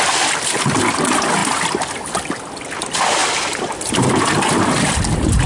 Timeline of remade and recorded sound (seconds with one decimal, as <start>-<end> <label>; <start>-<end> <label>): 0.0-5.5 recorded